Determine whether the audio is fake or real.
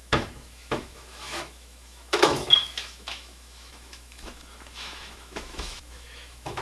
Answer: fake